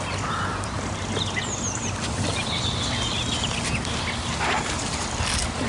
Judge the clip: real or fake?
real